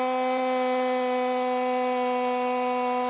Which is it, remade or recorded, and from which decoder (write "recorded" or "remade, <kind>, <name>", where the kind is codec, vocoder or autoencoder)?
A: recorded